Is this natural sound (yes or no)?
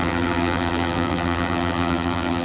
no